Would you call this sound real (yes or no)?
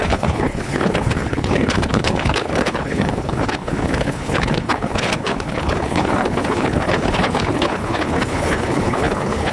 no